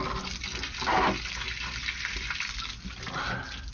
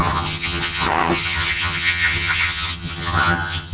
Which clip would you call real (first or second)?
first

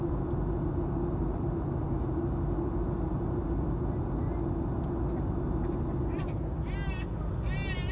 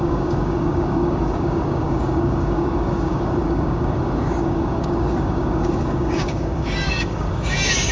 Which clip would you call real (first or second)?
first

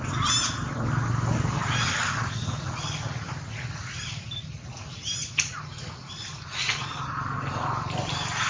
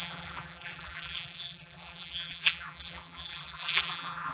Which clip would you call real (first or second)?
first